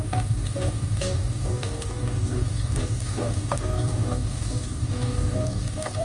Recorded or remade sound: remade